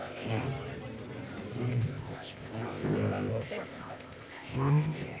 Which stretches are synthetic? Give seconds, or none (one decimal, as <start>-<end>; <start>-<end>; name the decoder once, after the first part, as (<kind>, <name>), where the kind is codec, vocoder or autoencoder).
0.0-0.4 (codec, ZipCodec); 1.7-5.2